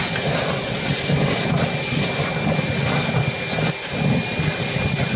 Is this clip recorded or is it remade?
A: recorded